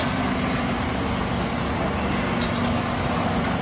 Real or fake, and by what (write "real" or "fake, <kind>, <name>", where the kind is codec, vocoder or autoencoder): real